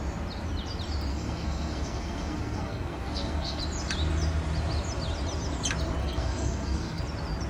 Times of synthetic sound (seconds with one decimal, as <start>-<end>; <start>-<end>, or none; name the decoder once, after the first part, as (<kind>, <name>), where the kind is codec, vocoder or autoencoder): 1.1-3.6 (codec, SNAC); 6.0-7.0